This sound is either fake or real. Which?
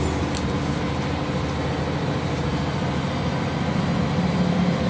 real